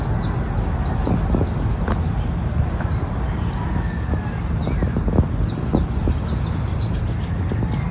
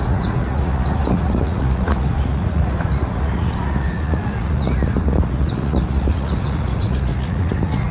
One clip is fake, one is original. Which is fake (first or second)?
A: second